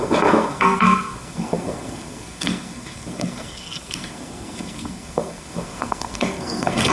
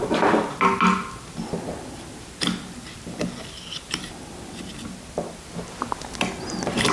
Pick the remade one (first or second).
first